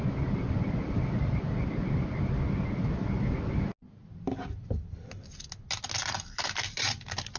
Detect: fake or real real